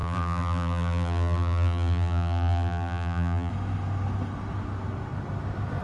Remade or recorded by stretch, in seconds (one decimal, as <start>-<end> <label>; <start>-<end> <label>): 0.0-3.5 remade; 3.5-5.8 recorded